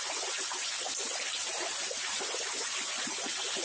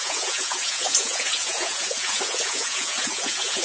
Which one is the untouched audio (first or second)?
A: first